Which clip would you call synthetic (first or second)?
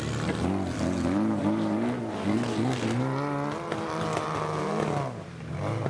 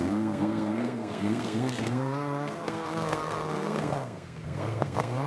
second